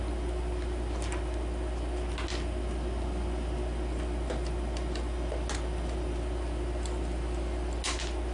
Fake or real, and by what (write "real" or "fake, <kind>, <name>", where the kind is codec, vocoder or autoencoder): real